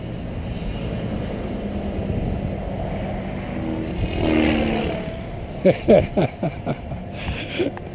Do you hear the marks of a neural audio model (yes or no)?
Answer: no